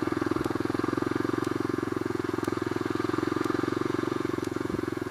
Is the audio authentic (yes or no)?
no